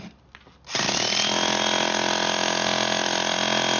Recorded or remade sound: recorded